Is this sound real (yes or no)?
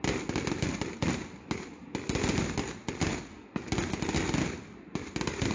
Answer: yes